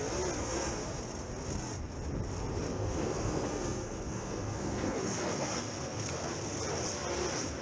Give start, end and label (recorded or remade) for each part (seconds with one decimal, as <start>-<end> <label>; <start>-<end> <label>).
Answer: 0.0-0.4 recorded; 0.4-1.0 remade; 1.0-2.7 recorded; 2.7-6.3 remade; 6.3-7.6 recorded

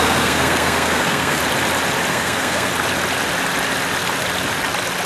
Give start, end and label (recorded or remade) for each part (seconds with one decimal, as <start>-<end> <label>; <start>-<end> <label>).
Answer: 0.0-1.4 remade; 1.4-2.1 recorded; 2.1-2.7 remade; 2.7-5.1 recorded

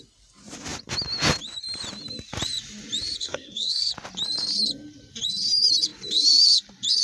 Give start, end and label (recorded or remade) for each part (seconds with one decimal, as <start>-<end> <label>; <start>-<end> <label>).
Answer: 0.0-3.2 recorded; 3.2-3.9 remade; 3.9-7.0 recorded

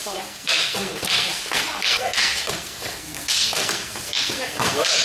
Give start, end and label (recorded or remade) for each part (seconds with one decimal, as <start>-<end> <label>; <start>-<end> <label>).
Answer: 0.0-5.0 remade